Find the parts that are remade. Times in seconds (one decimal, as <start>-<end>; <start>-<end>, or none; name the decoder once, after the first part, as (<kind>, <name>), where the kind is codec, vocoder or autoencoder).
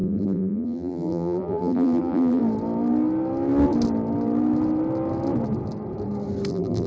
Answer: 0.0-2.4 (vocoder, BigVGAN v2); 6.5-6.9